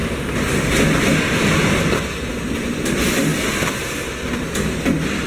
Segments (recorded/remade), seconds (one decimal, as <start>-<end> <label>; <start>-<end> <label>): 0.0-5.3 recorded